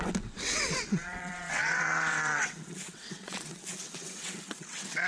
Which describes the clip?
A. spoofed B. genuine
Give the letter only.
A